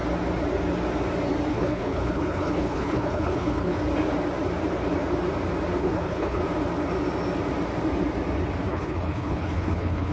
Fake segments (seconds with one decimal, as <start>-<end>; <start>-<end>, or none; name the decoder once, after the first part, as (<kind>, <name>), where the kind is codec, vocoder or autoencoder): 1.5-3.8 (codec, HILCodec); 5.8-6.4; 8.7-10.1